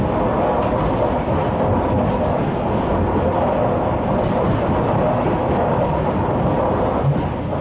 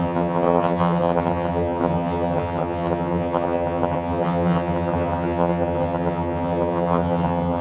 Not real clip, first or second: second